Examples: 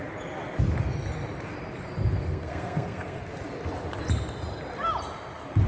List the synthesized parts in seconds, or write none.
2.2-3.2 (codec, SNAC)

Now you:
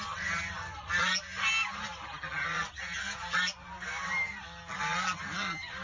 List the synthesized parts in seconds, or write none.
none